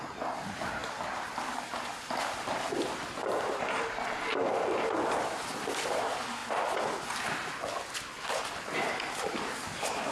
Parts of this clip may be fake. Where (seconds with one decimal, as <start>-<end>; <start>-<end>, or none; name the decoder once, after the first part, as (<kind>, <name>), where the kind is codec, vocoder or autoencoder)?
none